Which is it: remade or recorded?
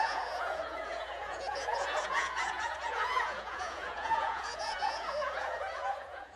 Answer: remade